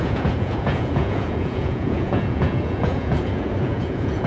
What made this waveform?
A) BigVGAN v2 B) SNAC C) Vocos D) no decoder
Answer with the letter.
C